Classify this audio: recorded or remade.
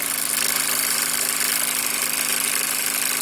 recorded